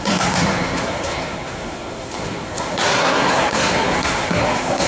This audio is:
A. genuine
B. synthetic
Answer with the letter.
B